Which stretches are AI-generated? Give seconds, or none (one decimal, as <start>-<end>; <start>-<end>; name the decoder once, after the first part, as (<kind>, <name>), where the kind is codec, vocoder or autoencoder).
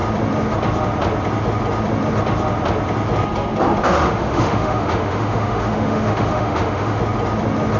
3.9-7.0 (autoencoder, DAC-VAE)